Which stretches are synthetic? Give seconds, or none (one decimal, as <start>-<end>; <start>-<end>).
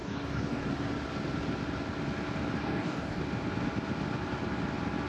0.0-0.7; 2.6-3.2